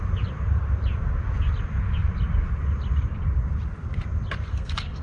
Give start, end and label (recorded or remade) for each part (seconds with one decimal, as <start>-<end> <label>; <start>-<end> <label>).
0.0-4.5 recorded; 4.5-5.0 remade